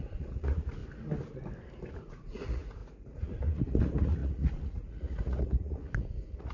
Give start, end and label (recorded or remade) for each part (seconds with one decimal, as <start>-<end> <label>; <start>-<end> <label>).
0.0-0.8 remade; 0.8-1.9 recorded; 1.9-6.5 remade